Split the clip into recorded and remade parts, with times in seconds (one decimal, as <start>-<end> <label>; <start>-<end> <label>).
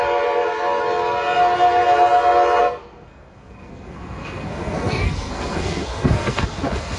0.0-2.6 recorded; 2.6-7.0 remade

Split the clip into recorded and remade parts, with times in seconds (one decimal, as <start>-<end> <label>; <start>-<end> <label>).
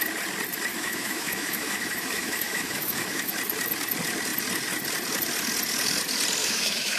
0.0-0.7 recorded; 0.7-3.3 remade; 3.3-6.4 recorded; 6.4-7.0 remade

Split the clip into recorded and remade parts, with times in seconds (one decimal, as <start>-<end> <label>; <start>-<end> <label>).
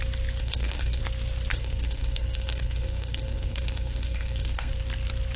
0.0-0.4 recorded; 0.4-1.0 remade; 1.0-1.5 recorded; 1.5-4.7 remade; 4.7-5.4 recorded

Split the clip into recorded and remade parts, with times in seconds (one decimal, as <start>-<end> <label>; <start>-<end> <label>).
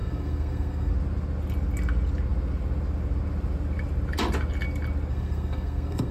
0.0-0.9 remade; 0.9-5.1 recorded; 5.1-6.1 remade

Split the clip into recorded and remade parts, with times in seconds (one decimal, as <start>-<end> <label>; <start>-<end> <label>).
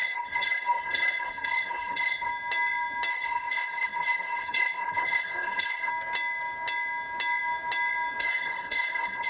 0.0-2.3 remade; 2.3-3.1 recorded; 3.1-5.9 remade; 5.9-8.2 recorded; 8.2-9.3 remade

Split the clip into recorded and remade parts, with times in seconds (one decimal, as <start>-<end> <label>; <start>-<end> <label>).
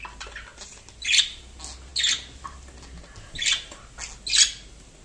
0.0-5.0 recorded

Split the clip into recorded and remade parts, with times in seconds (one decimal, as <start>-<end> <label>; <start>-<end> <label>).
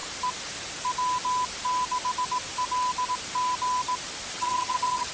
0.0-4.3 recorded; 4.3-5.1 remade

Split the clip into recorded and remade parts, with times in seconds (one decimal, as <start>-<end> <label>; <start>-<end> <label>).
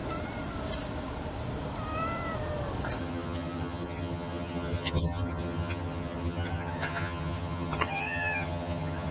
0.0-3.0 recorded; 3.0-9.1 remade